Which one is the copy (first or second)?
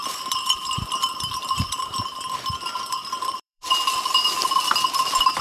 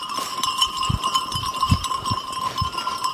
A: first